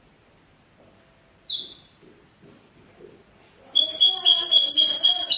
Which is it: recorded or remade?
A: recorded